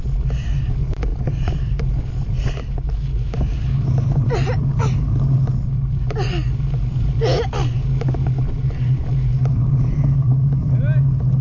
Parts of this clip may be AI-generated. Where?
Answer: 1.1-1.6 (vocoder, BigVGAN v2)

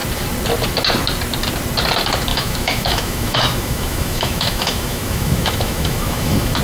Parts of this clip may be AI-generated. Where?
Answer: 2.3-6.6 (autoencoder, DAC-VAE)

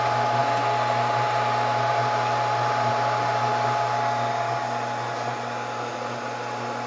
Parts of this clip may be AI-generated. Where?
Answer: none

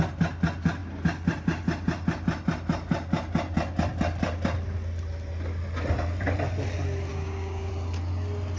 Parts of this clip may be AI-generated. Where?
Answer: 7.1-7.7 (codec, DAC)

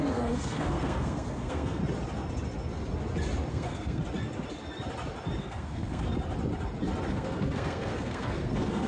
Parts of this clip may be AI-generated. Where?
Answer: 0.0-1.8 (codec, SNAC); 3.5-4.0; 5.4-6.1; 7.1-8.9

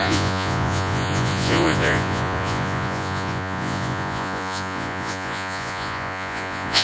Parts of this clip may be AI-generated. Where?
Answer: 0.0-6.8 (vocoder, Vocos)

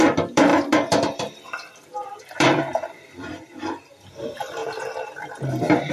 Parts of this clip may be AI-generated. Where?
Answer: 0.0-4.6 (vocoder, BigVGAN v2)

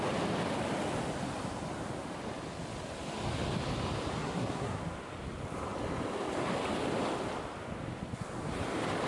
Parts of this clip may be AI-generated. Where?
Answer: 4.2-4.8 (codec, SNAC)